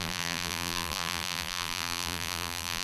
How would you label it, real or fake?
fake